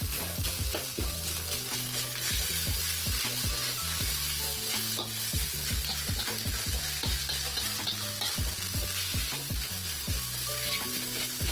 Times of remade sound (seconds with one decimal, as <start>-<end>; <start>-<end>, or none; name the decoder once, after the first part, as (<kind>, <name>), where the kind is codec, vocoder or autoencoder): none